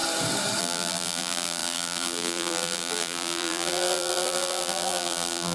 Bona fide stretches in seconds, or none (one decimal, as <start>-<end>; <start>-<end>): 0.0-0.6